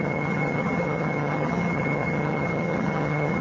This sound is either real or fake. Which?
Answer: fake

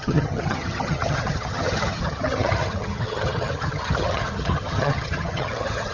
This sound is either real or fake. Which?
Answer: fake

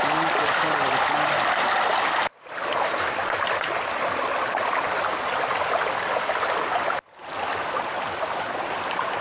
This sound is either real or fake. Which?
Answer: real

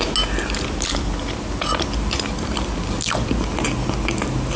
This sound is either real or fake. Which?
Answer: real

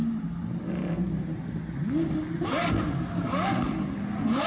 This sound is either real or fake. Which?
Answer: real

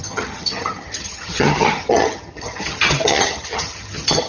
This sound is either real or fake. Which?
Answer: fake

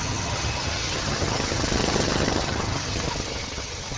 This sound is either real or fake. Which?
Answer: fake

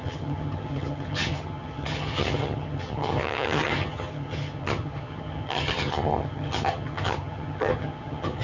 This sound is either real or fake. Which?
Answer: fake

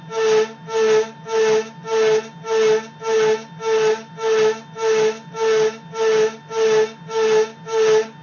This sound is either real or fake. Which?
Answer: real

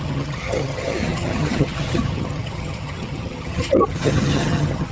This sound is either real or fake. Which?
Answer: fake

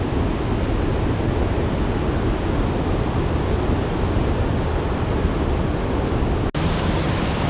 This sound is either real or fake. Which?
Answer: real